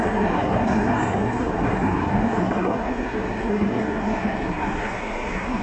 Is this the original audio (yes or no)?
no